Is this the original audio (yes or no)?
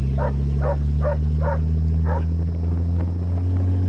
yes